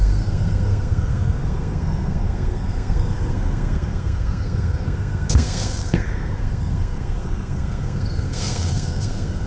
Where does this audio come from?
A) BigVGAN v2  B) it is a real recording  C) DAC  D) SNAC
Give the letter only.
D